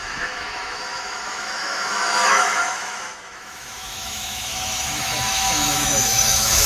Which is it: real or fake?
fake